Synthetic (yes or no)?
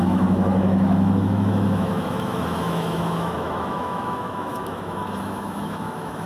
yes